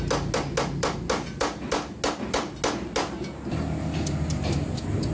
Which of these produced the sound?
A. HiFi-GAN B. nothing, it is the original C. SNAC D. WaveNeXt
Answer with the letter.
B